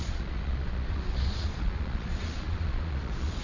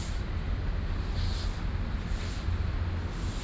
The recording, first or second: second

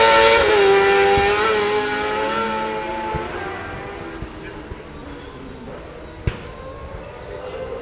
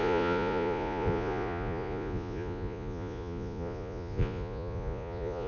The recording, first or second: first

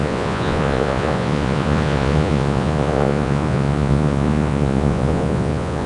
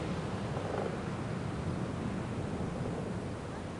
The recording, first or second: second